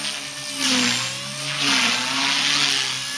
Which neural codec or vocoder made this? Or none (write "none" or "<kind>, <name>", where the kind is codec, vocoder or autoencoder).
none